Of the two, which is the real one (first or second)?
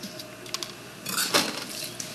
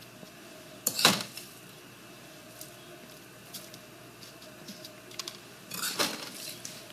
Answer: first